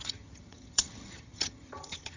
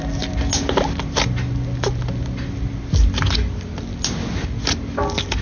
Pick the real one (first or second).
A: second